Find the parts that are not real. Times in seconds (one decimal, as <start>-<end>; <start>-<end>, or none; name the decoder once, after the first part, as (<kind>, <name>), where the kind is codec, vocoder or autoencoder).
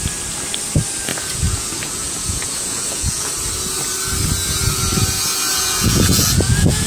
1.1-3.3 (vocoder, Vocos); 5.5-6.9